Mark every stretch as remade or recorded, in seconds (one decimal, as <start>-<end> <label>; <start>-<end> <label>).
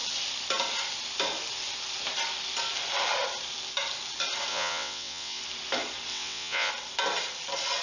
0.0-4.5 recorded; 4.5-5.4 remade; 5.4-6.1 recorded; 6.1-6.7 remade; 6.7-7.8 recorded